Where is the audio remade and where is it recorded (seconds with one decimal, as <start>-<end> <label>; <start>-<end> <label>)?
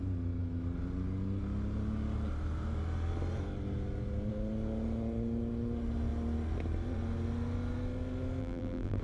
0.0-8.4 recorded; 8.4-9.0 remade